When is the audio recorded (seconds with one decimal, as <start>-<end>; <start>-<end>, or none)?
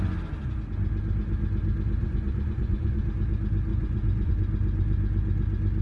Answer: 0.0-2.0; 3.0-3.7; 4.3-5.8